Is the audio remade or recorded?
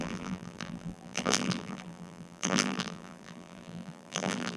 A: remade